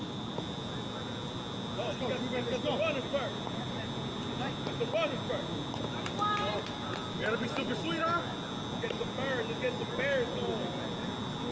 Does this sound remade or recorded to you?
recorded